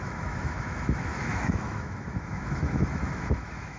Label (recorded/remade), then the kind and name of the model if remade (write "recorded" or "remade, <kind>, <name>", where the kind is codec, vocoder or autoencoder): remade, autoencoder, DAC-VAE